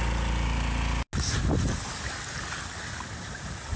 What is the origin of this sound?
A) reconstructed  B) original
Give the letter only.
B